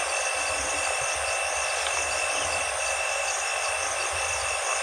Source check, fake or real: real